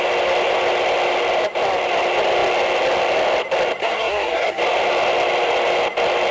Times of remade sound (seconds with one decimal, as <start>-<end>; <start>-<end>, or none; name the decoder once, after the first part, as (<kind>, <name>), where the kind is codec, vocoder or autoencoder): 3.8-4.6 (codec, SNAC)